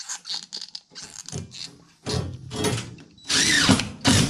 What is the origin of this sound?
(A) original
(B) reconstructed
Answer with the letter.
A